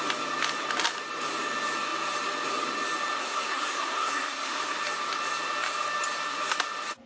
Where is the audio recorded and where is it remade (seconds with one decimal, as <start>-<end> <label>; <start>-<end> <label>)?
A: 0.0-3.2 recorded; 3.2-4.8 remade; 4.8-7.1 recorded